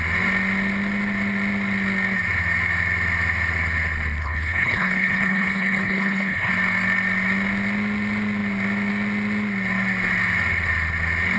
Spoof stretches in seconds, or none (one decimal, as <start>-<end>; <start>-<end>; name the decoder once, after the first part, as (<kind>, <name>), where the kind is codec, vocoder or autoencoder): 4.2-6.5 (codec, HILCodec)